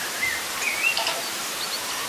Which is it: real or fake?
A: real